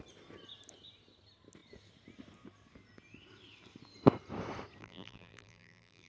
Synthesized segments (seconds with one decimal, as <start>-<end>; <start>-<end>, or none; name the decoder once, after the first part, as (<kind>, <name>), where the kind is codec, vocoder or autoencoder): 4.8-6.1 (vocoder, BigVGAN v2)